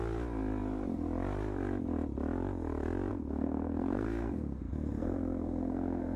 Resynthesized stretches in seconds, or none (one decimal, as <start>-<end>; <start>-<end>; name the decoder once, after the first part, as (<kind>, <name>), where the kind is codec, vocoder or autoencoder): 3.1-6.2 (codec, SNAC)